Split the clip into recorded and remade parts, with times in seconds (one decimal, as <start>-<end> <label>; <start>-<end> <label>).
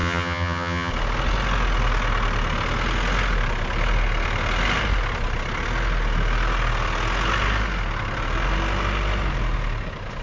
0.0-0.9 remade; 0.9-10.2 recorded